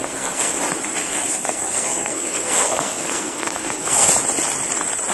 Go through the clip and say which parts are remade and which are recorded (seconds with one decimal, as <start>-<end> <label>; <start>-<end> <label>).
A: 0.0-0.6 remade; 0.6-1.0 recorded; 1.0-4.1 remade; 4.1-5.1 recorded